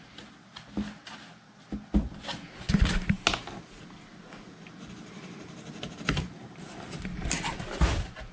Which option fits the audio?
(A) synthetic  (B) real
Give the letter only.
B